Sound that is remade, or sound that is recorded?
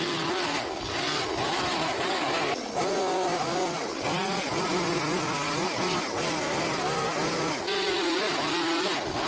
recorded